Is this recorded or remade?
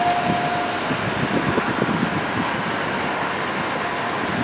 recorded